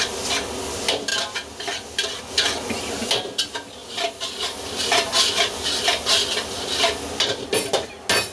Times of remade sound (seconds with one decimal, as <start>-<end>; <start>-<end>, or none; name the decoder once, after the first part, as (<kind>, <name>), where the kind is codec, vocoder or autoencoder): none